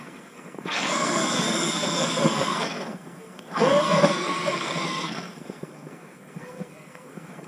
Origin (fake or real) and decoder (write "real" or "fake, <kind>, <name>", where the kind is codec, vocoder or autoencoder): fake, codec, SNAC